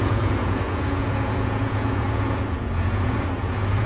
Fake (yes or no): yes